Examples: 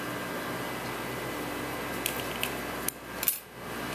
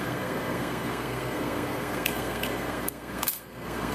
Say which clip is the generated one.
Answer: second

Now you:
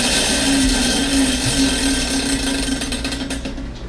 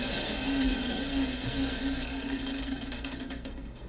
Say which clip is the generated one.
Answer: second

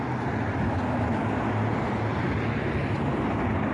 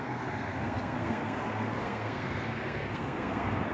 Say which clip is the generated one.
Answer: second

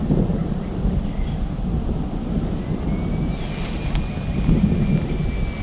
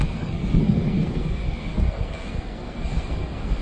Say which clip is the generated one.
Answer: second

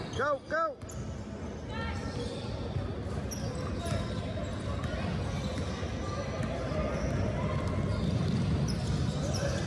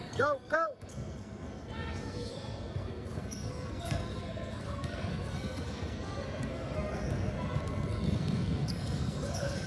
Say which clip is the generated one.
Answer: second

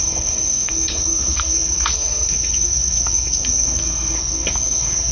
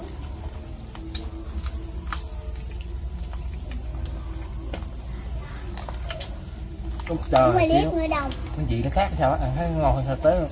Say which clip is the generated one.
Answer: first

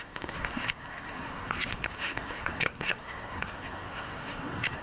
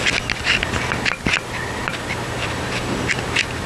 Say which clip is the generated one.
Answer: first